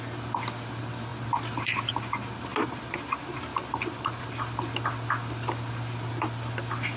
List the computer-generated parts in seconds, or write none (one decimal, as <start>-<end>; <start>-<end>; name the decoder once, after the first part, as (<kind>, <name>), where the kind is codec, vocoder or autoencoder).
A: none